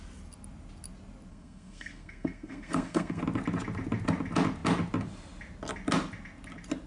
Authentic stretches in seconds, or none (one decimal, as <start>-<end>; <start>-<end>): 0.0-1.3; 3.2-6.9